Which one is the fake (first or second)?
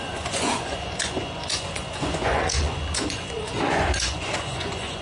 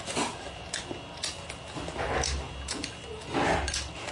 first